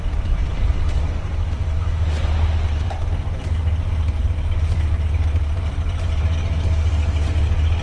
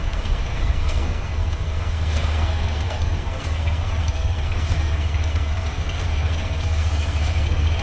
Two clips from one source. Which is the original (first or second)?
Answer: first